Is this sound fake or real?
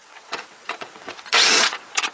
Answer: fake